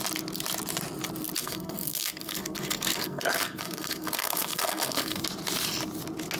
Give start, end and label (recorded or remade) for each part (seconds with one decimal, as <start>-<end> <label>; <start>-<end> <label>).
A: 0.0-1.4 recorded; 1.4-5.2 remade; 5.2-6.4 recorded